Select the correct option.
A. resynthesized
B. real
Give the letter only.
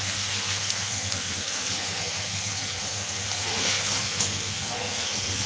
A